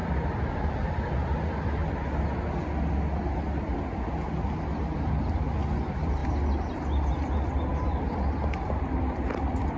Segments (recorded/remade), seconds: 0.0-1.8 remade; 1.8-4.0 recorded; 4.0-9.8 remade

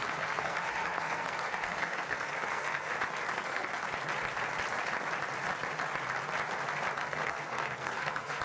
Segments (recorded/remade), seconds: 0.0-2.9 remade; 2.9-3.3 recorded; 3.3-3.8 remade; 3.8-7.0 recorded; 7.0-8.4 remade